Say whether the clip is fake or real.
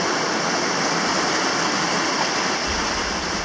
real